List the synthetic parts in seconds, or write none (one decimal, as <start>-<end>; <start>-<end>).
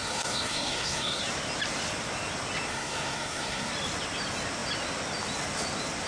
0.0-1.2; 2.7-3.7